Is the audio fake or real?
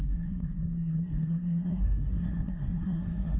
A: fake